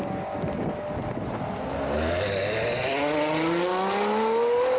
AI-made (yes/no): no